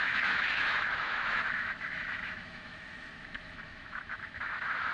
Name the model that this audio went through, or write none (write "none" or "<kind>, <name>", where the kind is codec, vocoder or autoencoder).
autoencoder, DAC-VAE